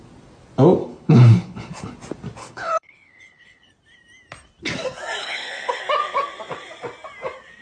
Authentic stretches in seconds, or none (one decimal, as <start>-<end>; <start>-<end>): 0.0-0.8; 1.9-2.4; 3.7-5.2; 5.8-7.6